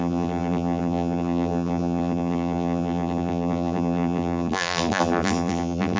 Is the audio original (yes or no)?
no